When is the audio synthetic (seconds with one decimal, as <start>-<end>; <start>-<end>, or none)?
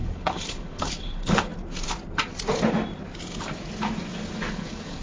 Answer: 0.0-1.5; 4.5-5.0